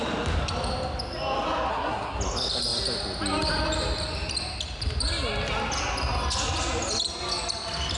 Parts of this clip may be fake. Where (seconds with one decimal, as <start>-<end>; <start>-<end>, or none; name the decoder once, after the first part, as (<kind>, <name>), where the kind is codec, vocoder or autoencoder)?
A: 1.7-2.2 (codec, SNAC)